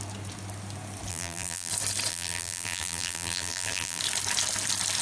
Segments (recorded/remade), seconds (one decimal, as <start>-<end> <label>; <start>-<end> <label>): 0.0-1.1 recorded; 1.1-1.7 remade; 1.7-2.1 recorded; 2.1-4.0 remade; 4.0-5.0 recorded